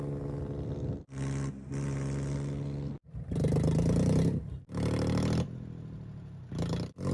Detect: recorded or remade recorded